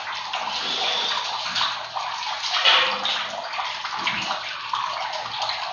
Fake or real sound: real